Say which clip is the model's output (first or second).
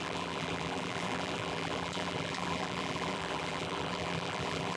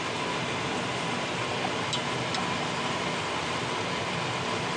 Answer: first